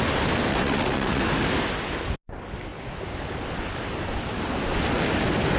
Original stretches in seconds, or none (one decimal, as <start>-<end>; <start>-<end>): 0.0-0.5; 1.2-5.6